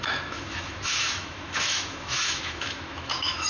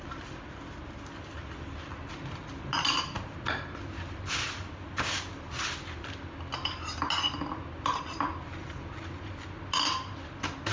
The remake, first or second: first